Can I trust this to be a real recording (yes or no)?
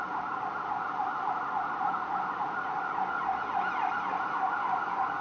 yes